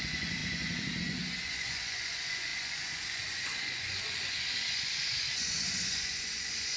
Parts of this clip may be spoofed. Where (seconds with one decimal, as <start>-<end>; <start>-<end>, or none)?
0.0-6.8